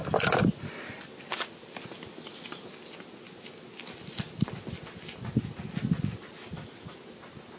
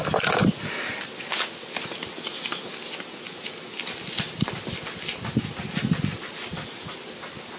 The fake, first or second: second